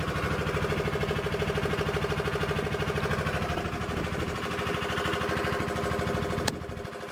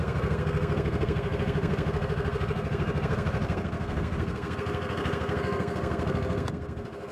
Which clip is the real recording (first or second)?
first